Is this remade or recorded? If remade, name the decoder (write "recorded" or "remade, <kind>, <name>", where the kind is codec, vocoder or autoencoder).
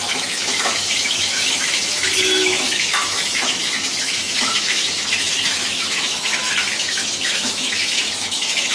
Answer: remade, autoencoder, DAC-VAE